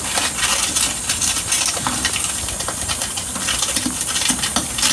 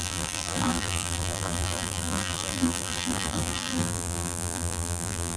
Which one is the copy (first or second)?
second